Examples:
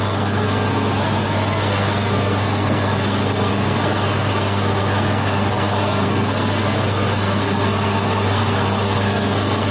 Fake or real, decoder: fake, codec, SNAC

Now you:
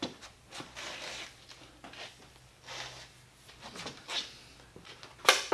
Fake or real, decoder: real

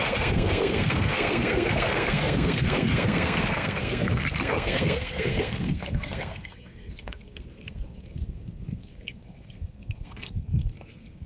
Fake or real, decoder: fake, codec, SNAC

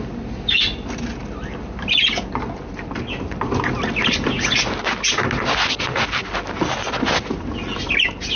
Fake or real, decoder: real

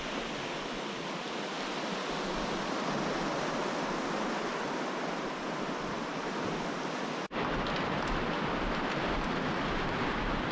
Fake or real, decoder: real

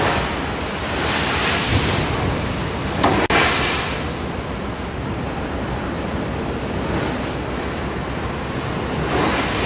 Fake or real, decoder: real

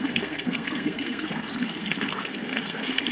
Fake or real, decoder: fake, codec, SNAC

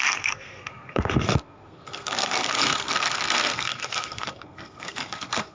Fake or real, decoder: fake, codec, SNAC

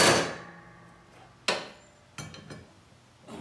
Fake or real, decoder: real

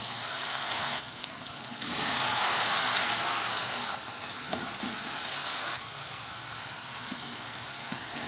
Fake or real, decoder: fake, codec, SNAC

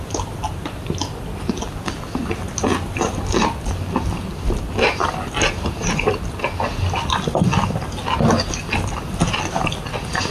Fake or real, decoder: real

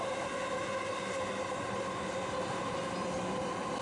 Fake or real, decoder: real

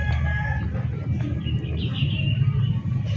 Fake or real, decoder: real